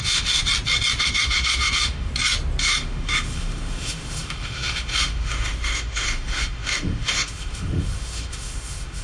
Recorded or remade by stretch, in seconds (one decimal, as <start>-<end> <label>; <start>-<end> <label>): 0.0-0.4 remade; 0.4-1.0 recorded; 1.0-2.1 remade; 2.1-2.6 recorded; 2.6-9.0 remade